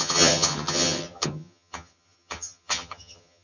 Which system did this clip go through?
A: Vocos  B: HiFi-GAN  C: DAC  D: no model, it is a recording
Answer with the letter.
B